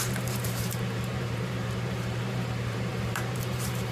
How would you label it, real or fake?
fake